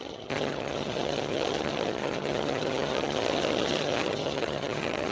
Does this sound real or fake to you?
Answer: fake